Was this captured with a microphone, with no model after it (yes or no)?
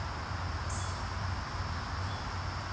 no